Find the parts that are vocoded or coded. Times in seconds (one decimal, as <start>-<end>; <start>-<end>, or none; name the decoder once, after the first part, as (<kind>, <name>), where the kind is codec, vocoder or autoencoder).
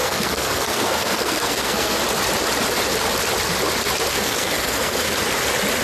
0.0-2.0 (codec, SNAC); 4.1-5.1